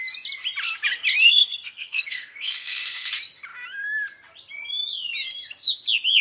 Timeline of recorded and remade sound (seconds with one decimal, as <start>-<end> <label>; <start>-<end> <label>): 0.0-1.1 recorded; 1.1-3.1 remade; 3.1-6.2 recorded